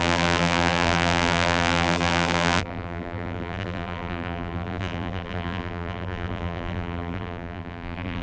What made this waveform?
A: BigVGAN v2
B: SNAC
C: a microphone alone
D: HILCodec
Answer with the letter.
A